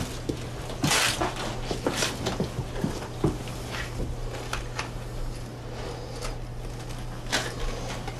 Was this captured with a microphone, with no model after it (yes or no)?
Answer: yes